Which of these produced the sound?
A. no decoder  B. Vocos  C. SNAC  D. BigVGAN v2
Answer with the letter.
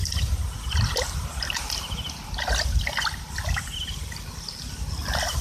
A